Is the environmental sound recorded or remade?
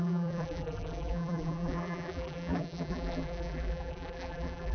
remade